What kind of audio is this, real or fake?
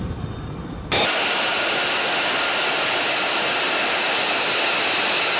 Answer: real